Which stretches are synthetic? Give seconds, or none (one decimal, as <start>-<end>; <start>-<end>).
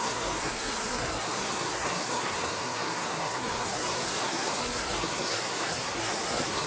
0.0-6.7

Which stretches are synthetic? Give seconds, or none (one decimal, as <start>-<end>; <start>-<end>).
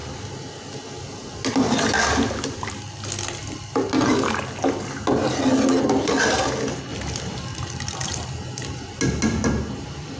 none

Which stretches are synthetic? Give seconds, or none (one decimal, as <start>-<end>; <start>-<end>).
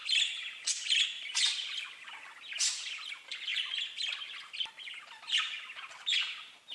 none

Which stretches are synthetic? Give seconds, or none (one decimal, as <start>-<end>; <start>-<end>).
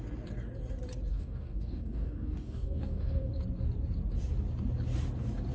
1.1-3.3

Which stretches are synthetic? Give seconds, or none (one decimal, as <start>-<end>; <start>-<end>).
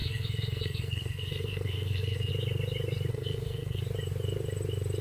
0.0-2.3; 3.1-3.8